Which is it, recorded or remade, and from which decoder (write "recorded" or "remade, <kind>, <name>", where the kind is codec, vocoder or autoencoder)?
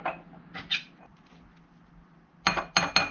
recorded